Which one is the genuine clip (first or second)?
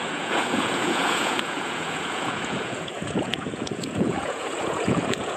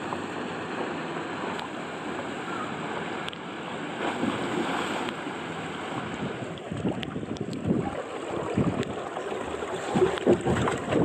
second